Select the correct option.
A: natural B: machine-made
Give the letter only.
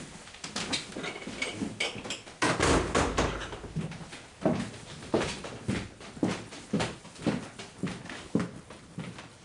A